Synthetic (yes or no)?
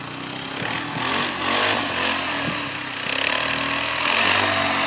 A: no